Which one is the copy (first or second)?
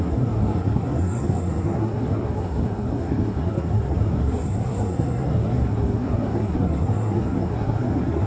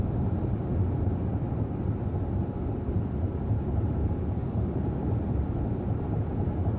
first